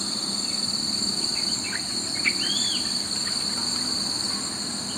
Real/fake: real